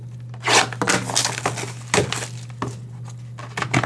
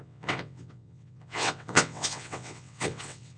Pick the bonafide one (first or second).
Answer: first